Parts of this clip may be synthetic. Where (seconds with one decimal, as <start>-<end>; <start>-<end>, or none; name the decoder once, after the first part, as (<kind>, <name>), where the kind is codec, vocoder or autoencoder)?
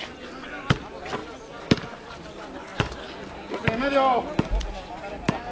none